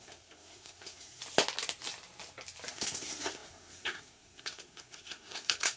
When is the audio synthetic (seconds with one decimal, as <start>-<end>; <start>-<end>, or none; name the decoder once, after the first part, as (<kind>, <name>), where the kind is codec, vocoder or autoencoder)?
0.0-1.2 (codec, SNAC); 2.7-5.8